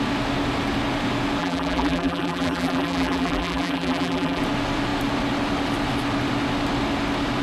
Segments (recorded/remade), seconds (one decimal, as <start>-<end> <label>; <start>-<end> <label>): 0.0-1.4 recorded; 1.4-4.4 remade; 4.4-7.4 recorded